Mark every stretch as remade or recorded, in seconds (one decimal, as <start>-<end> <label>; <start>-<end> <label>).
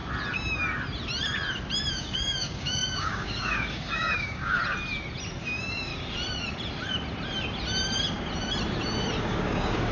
0.0-1.9 recorded; 1.9-4.6 remade; 4.6-5.4 recorded; 5.4-5.9 remade; 5.9-9.2 recorded; 9.2-9.9 remade